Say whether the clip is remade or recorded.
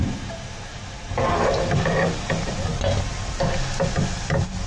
recorded